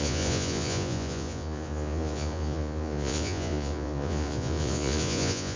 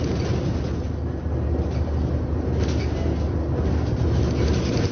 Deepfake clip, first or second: first